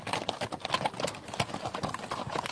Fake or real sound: real